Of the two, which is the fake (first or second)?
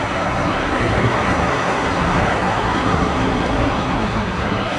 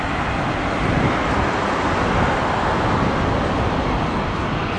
first